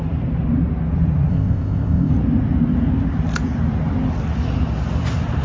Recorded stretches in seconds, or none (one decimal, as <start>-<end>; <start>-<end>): 0.0-1.3; 2.1-5.4